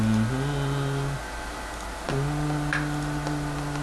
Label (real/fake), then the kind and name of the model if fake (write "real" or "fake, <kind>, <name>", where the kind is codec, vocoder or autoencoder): real